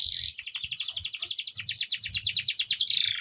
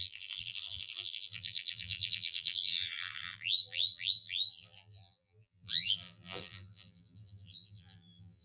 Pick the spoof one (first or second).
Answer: second